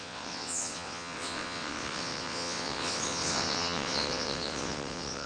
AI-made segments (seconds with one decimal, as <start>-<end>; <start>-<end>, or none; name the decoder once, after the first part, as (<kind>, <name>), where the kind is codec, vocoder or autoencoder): 0.0-5.3 (vocoder, WaveNeXt)